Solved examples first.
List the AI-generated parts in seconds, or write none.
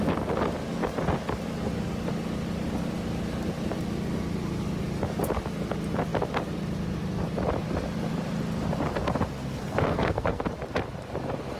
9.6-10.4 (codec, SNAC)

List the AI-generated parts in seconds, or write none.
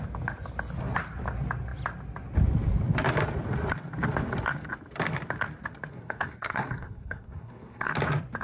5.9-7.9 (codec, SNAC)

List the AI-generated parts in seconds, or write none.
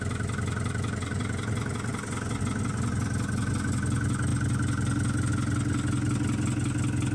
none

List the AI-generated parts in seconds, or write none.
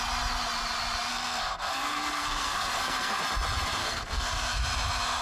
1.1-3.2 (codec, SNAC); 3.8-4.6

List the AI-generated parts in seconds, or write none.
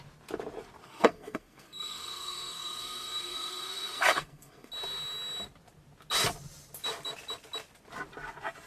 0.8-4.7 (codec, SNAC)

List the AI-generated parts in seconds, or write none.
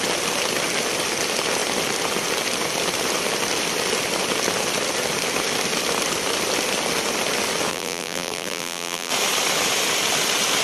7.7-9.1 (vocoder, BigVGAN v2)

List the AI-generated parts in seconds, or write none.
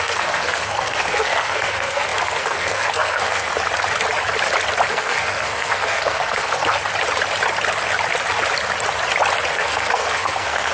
0.0-3.5 (codec, SNAC); 4.9-6.8; 9.5-10.7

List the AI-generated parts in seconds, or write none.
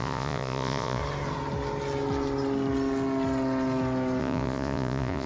0.0-1.0 (vocoder, Vocos); 4.2-5.3